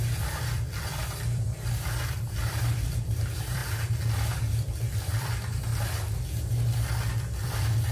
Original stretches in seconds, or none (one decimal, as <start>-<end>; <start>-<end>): 3.6-4.3; 5.7-7.1